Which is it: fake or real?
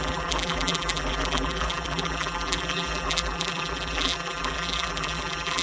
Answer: fake